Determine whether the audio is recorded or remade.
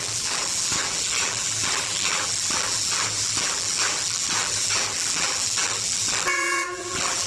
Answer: remade